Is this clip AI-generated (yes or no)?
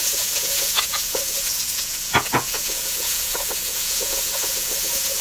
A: yes